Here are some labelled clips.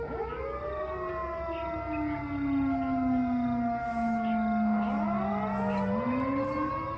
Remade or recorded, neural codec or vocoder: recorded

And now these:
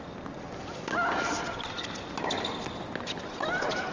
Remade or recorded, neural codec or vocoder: recorded